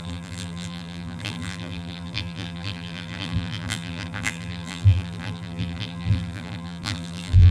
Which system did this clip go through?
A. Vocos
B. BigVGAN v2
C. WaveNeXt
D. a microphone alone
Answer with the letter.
B